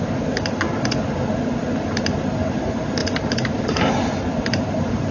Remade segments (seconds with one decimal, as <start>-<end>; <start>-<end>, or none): 3.0-3.9; 4.3-5.1